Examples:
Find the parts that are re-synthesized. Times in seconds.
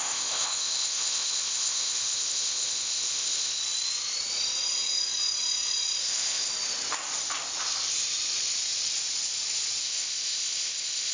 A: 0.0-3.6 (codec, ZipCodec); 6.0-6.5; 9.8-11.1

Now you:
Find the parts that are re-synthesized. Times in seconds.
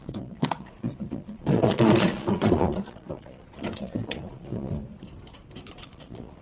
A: 0.0-4.8 (vocoder, Vocos); 5.7-6.4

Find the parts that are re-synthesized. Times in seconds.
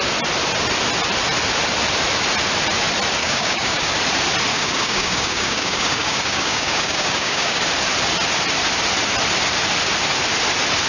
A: 3.2-3.9 (codec, DAC); 4.5-7.6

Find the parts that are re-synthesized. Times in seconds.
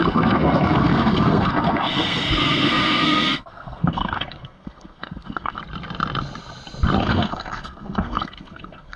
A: 0.0-5.6 (codec, SNAC); 7.0-9.0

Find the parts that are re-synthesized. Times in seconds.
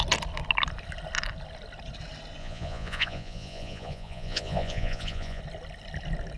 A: 2.4-5.4 (vocoder, Vocos)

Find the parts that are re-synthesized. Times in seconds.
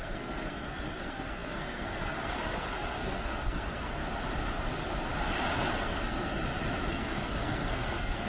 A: 0.0-4.0 (codec, SNAC); 5.8-6.3; 6.9-8.3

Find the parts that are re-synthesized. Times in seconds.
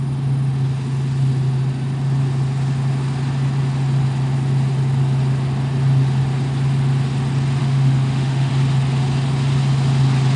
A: 7.6-8.5 (autoencoder, DAC-VAE)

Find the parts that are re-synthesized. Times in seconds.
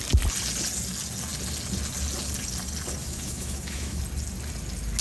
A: 3.0-4.0 (autoencoder, DAC-VAE)